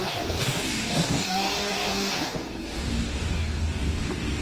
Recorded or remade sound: remade